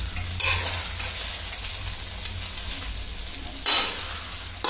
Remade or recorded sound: recorded